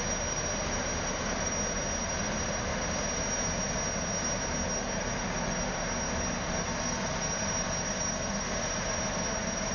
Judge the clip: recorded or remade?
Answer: recorded